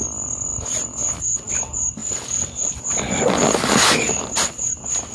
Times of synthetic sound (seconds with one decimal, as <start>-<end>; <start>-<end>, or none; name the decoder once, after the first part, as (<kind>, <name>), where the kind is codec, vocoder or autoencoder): none